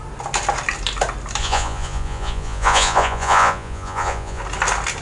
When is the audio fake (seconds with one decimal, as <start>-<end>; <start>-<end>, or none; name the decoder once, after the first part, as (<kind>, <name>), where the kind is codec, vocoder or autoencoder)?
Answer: 1.4-4.4 (vocoder, Vocos)